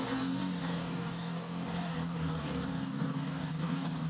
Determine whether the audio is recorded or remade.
remade